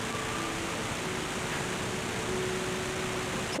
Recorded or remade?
recorded